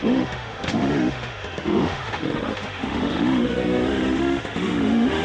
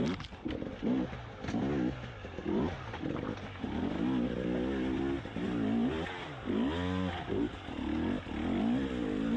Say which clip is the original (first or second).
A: second